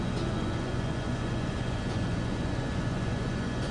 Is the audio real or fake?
fake